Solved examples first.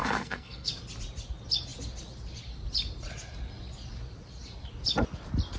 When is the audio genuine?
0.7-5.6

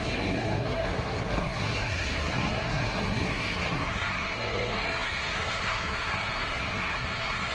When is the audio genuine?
none